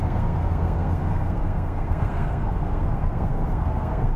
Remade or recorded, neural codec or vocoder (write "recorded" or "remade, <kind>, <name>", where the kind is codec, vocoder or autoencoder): remade, codec, SNAC